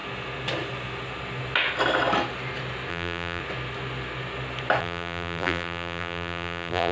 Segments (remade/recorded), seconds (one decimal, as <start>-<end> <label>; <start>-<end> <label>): 0.0-2.9 recorded; 2.9-3.4 remade; 3.4-4.8 recorded; 4.8-6.9 remade